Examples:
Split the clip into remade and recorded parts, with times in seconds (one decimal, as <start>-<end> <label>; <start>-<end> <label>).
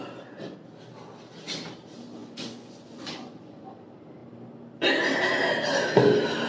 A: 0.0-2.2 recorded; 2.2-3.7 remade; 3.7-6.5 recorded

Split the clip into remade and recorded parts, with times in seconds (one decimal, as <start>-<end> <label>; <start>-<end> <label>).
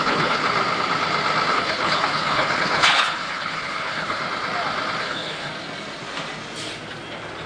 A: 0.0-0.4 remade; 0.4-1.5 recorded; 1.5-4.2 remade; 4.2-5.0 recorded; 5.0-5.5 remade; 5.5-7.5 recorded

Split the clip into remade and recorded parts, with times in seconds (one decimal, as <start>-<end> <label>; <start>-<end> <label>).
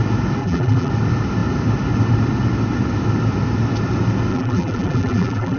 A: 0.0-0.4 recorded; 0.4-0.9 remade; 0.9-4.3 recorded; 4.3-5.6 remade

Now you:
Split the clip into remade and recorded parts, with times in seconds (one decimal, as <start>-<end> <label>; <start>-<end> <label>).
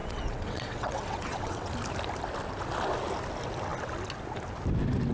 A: 0.0-1.7 remade; 1.7-5.1 recorded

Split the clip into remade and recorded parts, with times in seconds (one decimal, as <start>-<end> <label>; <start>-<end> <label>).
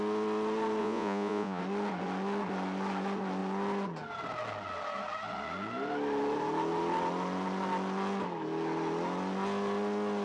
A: 0.0-0.8 recorded; 0.8-1.6 remade; 1.6-10.2 recorded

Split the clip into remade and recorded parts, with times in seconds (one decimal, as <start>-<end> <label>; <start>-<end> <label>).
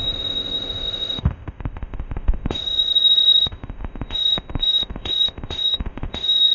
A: 0.0-6.5 remade